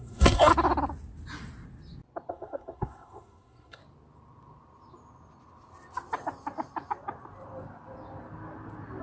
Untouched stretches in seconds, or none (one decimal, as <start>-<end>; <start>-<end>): 0.5-2.3; 3.8-9.0